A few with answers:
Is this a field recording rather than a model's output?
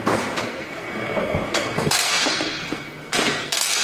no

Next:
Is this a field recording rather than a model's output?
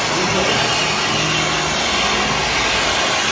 yes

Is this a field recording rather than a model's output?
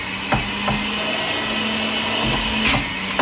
yes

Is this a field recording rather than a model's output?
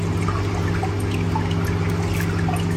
yes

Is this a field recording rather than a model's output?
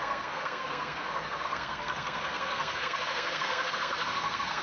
no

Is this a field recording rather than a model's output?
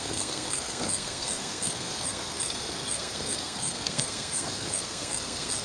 no